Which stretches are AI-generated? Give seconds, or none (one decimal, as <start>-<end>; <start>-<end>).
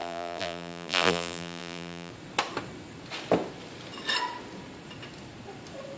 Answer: 0.0-2.1